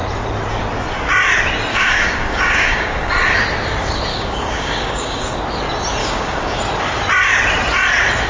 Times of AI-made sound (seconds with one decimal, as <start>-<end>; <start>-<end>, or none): 1.7-3.1; 4.1-5.4; 6.0-6.6